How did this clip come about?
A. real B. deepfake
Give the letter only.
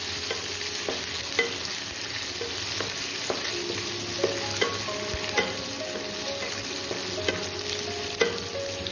A